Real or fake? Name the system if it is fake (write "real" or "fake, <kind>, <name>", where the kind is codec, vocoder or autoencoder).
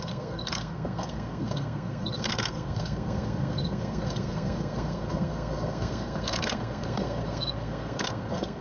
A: fake, codec, SNAC